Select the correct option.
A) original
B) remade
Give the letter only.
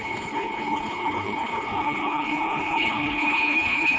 B